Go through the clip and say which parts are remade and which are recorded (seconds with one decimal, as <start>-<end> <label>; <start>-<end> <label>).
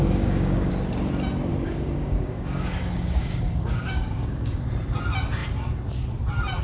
0.0-0.7 remade; 0.7-1.5 recorded; 1.5-4.6 remade; 4.6-6.6 recorded